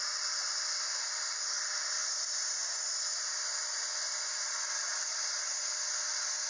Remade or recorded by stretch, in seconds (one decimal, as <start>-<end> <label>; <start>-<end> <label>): 0.0-0.5 remade; 0.5-2.0 recorded; 2.0-2.7 remade; 2.7-4.9 recorded; 4.9-5.8 remade; 5.8-6.5 recorded